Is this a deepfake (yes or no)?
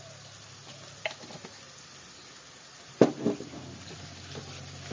no